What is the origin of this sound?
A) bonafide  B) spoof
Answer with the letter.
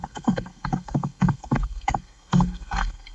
B